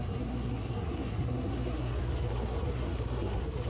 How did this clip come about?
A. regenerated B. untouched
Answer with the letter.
A